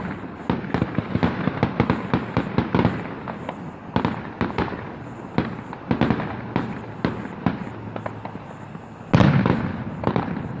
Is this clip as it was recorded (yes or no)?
yes